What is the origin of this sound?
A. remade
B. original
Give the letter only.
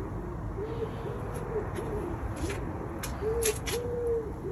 B